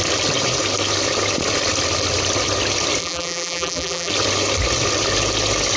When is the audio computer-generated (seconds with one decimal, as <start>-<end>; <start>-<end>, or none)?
3.0-4.1